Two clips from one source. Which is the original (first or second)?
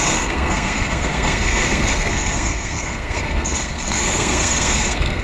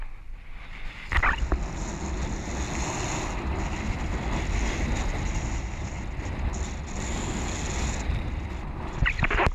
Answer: second